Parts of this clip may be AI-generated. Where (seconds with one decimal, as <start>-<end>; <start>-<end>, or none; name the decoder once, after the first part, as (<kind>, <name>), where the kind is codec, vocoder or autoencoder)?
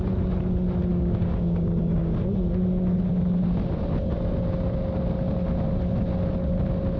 0.9-2.1 (codec, DAC)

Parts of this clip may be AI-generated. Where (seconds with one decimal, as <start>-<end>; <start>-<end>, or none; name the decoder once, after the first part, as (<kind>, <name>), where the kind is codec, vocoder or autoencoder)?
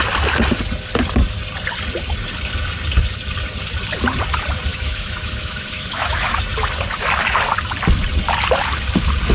4.7-6.4 (autoencoder, DAC-VAE)